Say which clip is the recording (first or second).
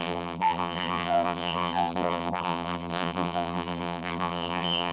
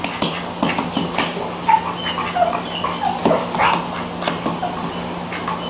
second